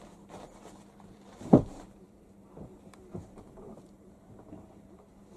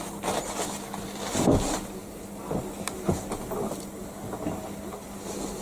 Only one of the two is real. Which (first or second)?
second